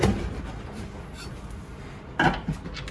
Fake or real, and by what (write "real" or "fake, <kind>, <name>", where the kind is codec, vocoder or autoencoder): real